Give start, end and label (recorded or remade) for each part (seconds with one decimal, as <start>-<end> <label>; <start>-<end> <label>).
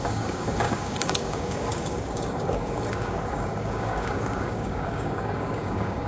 0.0-6.1 remade